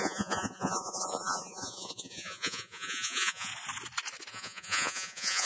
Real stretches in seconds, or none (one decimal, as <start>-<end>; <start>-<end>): 3.5-4.3